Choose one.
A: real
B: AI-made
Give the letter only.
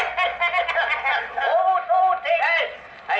A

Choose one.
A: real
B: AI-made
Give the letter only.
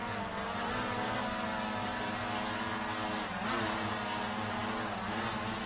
A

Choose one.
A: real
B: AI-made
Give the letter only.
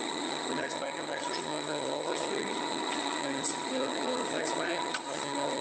B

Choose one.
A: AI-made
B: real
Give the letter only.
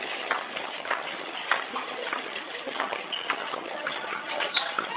A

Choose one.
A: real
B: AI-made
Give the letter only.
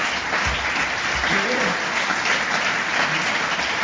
A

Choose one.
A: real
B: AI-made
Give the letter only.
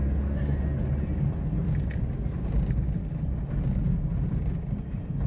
A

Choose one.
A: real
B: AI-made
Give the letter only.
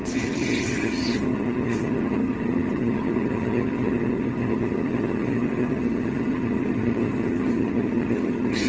B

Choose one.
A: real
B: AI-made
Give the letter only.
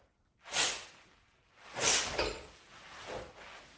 A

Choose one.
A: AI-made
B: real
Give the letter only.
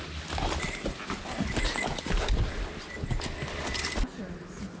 B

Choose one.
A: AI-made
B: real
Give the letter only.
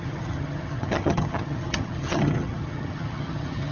A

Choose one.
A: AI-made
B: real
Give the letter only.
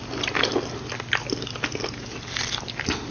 B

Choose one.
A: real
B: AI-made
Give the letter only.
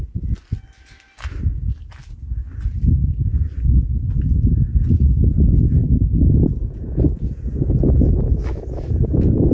A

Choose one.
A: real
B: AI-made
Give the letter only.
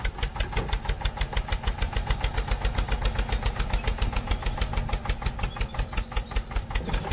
A